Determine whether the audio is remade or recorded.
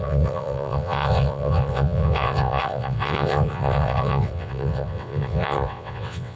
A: remade